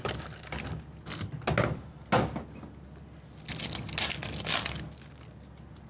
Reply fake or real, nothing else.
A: real